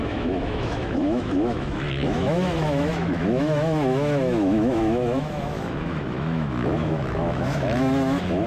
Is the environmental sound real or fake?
fake